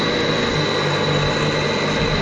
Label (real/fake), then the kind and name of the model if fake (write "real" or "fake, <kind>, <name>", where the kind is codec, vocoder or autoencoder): real